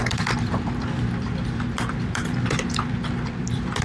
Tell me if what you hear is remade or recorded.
remade